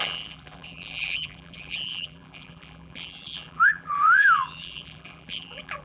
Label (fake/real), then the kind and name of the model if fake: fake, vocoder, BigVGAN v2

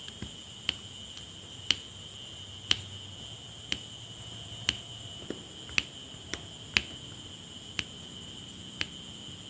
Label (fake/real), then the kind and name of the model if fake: real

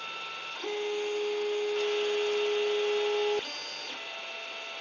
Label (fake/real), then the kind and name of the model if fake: real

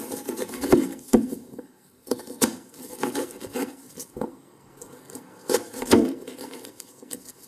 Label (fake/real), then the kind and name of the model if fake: fake, codec, SNAC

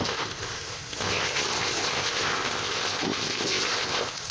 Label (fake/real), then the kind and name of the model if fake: fake, codec, ZipCodec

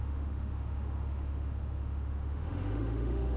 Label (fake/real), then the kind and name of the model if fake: fake, autoencoder, DAC-VAE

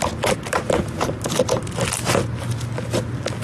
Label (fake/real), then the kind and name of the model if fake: real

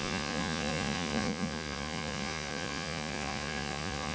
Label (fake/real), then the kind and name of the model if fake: fake, vocoder, Vocos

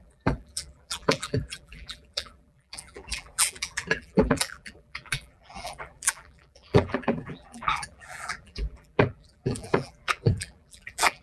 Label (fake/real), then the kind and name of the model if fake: fake, vocoder, BigVGAN v2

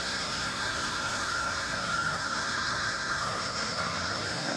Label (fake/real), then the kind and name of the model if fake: fake, codec, SNAC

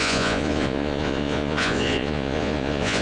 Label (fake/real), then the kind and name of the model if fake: fake, vocoder, Vocos